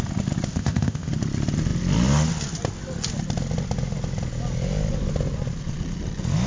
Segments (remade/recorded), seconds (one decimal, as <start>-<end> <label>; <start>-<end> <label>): 0.0-0.5 recorded; 0.5-1.1 remade; 1.1-6.5 recorded